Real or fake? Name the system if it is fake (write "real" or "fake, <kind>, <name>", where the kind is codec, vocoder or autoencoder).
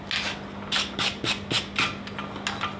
real